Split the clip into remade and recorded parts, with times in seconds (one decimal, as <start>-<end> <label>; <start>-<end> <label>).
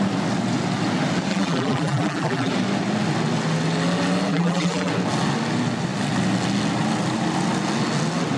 0.0-1.3 recorded; 1.3-2.5 remade; 2.5-4.3 recorded; 4.3-4.9 remade; 4.9-8.4 recorded